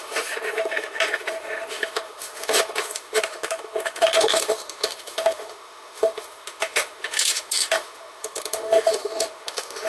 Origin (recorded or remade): remade